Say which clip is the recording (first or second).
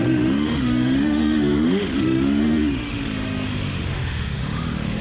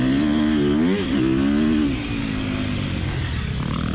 second